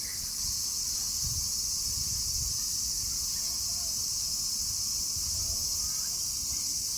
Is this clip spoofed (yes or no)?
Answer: no